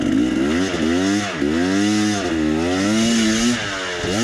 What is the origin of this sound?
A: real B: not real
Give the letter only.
A